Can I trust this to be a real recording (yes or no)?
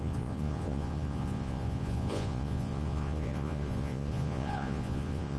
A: no